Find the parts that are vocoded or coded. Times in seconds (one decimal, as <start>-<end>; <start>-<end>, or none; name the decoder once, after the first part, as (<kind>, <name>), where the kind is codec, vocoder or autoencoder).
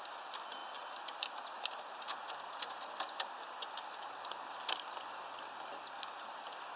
none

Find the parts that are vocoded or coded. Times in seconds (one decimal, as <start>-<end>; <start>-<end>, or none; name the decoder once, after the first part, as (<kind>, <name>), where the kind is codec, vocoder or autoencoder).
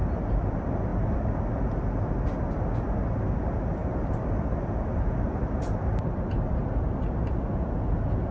3.8-7.2 (vocoder, BigVGAN v2)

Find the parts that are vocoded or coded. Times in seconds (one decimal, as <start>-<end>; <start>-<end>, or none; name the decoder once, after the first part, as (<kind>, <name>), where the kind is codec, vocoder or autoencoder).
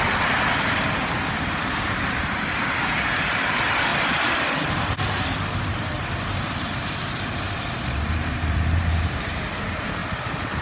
0.0-3.9 (vocoder, BigVGAN v2); 8.1-10.0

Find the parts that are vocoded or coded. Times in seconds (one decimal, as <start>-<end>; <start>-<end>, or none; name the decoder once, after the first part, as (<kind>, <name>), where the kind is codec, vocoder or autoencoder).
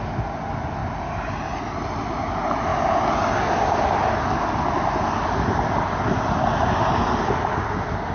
0.8-1.6 (vocoder, BigVGAN v2)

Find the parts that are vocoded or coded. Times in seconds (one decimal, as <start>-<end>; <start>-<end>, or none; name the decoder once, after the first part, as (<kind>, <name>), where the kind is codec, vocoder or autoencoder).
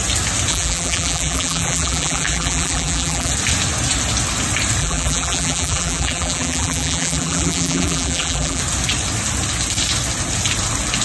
0.5-3.3 (vocoder, BigVGAN v2); 4.8-8.6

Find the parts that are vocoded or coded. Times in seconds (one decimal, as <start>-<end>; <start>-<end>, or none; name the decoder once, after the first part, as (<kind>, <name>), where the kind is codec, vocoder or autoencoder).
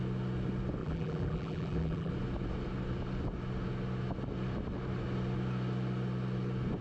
0.8-2.1 (vocoder, BigVGAN v2)